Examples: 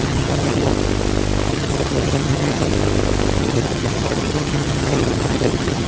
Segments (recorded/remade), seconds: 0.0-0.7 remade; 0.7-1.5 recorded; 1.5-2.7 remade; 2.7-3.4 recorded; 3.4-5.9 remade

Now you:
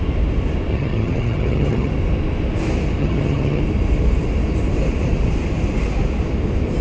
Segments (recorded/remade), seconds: 0.0-0.7 recorded; 0.7-1.9 remade; 1.9-3.0 recorded; 3.0-3.6 remade; 3.6-6.8 recorded

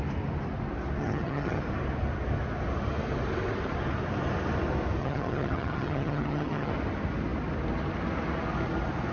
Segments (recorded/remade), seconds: 0.0-1.0 recorded; 1.0-1.6 remade; 1.6-5.0 recorded; 5.0-6.7 remade; 6.7-9.1 recorded

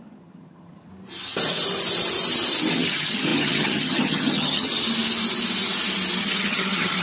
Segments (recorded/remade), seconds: 0.0-0.9 remade; 0.9-2.7 recorded; 2.7-4.7 remade; 4.7-6.2 recorded; 6.2-7.0 remade

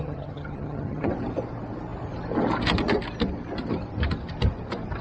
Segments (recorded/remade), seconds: 0.0-1.1 remade; 1.1-5.0 recorded

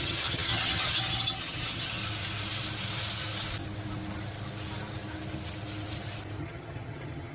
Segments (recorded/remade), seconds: 0.0-2.0 remade; 2.0-6.4 recorded; 6.4-7.3 remade

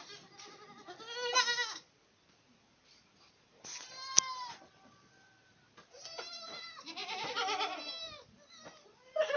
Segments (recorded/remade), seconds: 0.0-9.4 recorded

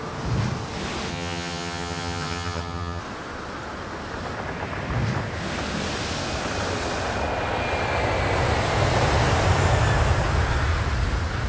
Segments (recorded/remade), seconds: 0.0-1.1 recorded; 1.1-3.0 remade; 3.0-11.5 recorded